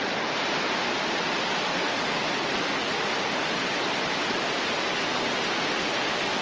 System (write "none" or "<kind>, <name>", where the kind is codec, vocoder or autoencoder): none